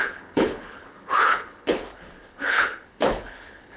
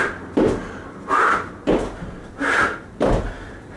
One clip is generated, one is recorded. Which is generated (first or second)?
first